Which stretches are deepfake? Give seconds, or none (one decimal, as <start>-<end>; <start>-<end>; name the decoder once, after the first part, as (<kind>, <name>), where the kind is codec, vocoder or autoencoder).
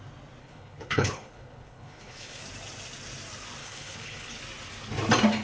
0.4-2.4 (codec, HILCodec); 3.6-4.4